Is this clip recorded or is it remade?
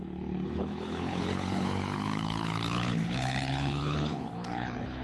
remade